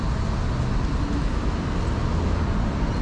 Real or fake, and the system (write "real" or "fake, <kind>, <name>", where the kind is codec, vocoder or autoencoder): real